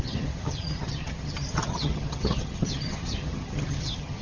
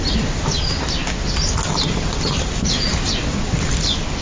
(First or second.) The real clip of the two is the second